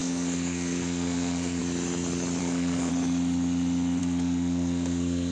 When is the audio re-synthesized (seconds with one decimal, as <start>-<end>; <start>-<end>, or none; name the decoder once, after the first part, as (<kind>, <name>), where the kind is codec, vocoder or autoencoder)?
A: 0.0-1.6 (codec, SNAC); 2.4-2.9; 4.0-5.3